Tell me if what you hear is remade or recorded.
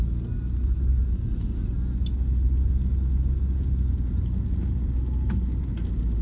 recorded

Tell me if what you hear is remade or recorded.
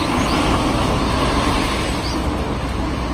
recorded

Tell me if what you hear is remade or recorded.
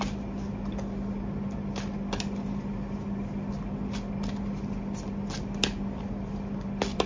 recorded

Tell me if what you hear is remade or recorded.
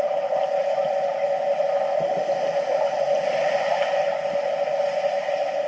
recorded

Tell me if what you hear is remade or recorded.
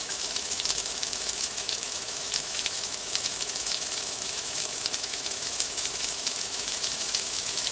remade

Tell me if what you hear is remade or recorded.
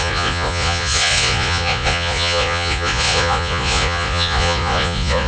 remade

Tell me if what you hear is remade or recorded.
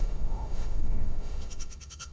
remade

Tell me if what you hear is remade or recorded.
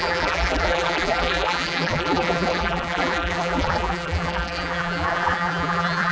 remade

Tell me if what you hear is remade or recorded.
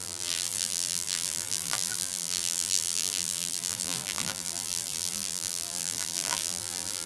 remade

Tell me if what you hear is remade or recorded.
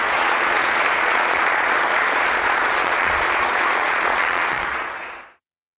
remade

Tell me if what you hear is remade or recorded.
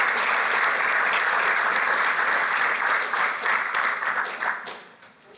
recorded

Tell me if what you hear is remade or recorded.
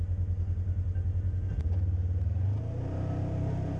recorded